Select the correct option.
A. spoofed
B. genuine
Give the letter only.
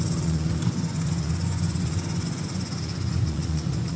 A